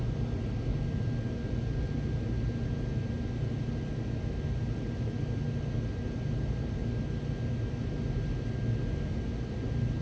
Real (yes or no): yes